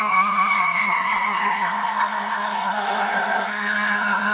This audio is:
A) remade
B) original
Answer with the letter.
A